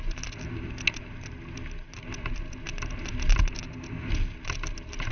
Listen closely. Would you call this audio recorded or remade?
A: recorded